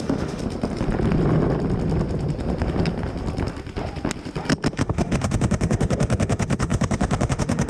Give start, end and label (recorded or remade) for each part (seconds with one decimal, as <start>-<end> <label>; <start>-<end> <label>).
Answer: 0.0-0.4 remade; 0.4-4.7 recorded; 4.7-7.7 remade